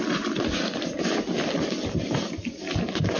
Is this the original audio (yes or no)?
yes